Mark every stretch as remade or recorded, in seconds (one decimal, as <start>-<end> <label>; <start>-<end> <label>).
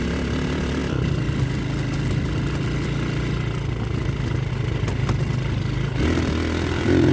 0.0-7.1 recorded